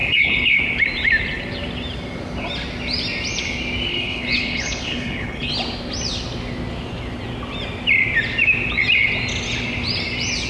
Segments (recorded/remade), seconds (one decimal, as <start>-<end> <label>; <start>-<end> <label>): 0.0-0.6 remade; 0.6-3.9 recorded; 3.9-5.5 remade; 5.5-10.5 recorded